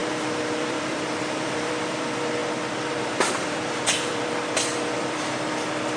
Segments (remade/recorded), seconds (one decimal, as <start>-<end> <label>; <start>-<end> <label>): 0.0-2.4 remade; 2.4-3.0 recorded; 3.0-6.0 remade